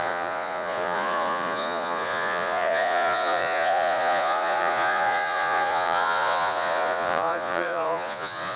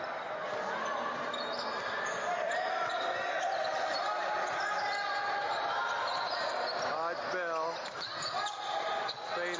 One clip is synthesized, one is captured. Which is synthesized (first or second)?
first